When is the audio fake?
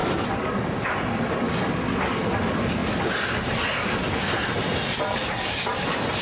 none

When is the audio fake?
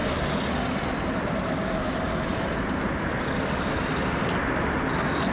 none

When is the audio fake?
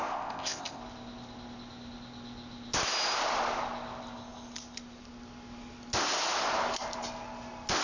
0.0-0.8 (codec, ZipCodec)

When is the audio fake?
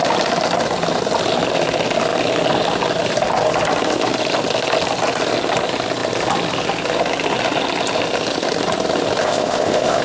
9.2-10.0 (codec, ZipCodec)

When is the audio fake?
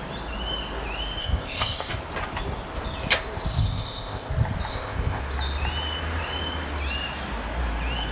1.2-1.9 (codec, ZipCodec); 3.6-4.3; 4.7-5.2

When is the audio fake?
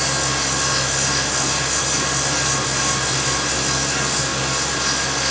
none